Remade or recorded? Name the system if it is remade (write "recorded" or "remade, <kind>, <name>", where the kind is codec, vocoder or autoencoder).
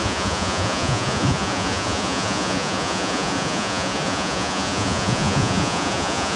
remade, vocoder, Vocos